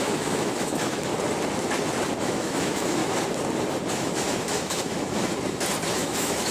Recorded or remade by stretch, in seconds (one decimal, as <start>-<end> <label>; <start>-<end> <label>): 0.0-1.1 remade; 1.1-2.2 recorded; 2.2-3.0 remade; 3.0-3.9 recorded; 3.9-5.3 remade; 5.3-6.0 recorded; 6.0-6.5 remade